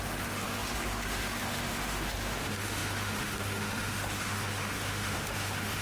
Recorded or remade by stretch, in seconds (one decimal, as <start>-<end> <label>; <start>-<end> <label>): 0.0-5.8 remade